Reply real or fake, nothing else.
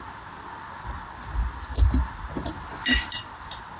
real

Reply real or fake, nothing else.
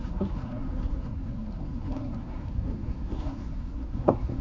fake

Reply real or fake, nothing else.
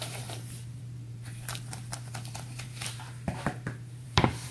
fake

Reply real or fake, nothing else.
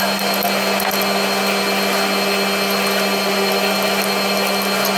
real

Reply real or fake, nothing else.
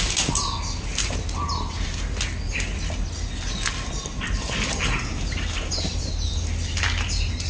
real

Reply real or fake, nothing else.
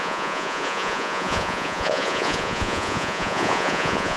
fake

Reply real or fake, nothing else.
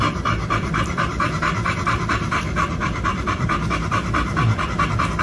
fake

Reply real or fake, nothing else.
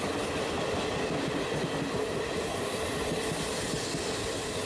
real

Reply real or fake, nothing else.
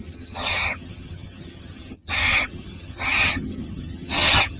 fake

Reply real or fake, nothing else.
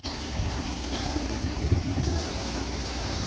fake